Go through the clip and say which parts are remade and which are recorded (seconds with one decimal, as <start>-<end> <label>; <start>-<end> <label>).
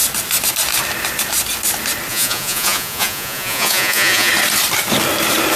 0.0-2.1 recorded; 2.1-4.3 remade; 4.3-5.6 recorded